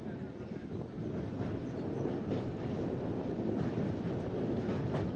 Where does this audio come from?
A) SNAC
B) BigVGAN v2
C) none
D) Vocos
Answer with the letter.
C